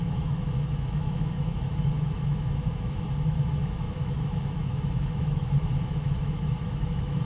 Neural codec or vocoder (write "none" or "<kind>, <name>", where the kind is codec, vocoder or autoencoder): autoencoder, DAC-VAE